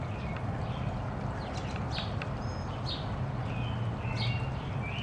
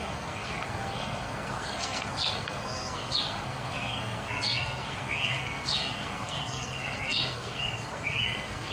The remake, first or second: second